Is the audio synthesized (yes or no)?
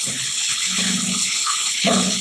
yes